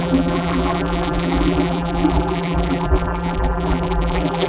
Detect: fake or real fake